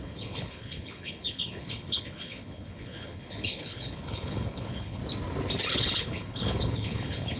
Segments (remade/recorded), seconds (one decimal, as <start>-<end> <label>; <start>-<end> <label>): 0.0-5.0 remade; 5.0-5.7 recorded; 5.7-7.4 remade